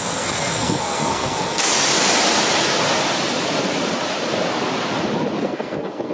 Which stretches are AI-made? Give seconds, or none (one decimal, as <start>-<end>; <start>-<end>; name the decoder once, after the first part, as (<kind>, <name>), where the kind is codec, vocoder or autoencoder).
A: 0.0-1.7 (codec, SNAC); 5.4-6.1